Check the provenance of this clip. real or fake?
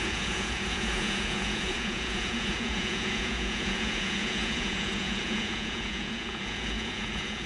fake